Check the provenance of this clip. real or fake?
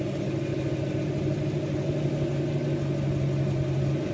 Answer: real